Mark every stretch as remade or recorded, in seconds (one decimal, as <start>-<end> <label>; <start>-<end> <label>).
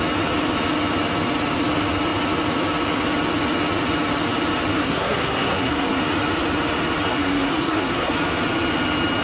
0.0-4.7 recorded; 4.7-6.0 remade; 6.0-7.1 recorded; 7.1-8.1 remade; 8.1-9.2 recorded